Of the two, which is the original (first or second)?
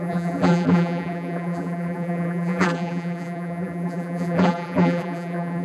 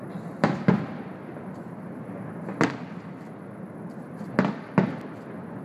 second